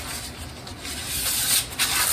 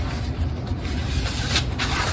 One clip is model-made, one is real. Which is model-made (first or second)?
second